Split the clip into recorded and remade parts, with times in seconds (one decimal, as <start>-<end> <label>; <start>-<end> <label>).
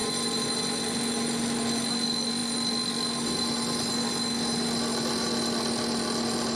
0.0-6.6 recorded